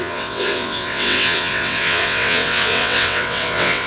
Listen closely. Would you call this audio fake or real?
fake